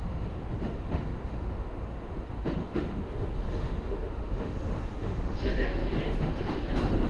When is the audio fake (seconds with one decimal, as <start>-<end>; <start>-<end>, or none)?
0.0-7.1